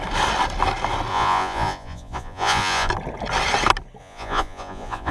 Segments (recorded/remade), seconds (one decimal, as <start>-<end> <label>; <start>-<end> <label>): 0.0-1.1 recorded; 1.1-2.9 remade; 2.9-4.0 recorded; 4.0-5.1 remade